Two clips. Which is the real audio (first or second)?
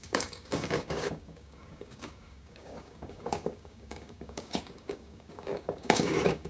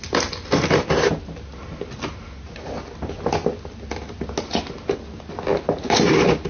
second